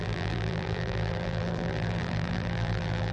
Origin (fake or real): fake